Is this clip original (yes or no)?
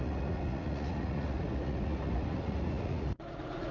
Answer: no